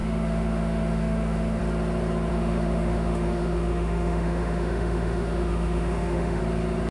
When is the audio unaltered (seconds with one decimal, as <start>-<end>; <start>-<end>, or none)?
1.6-2.3; 6.4-6.9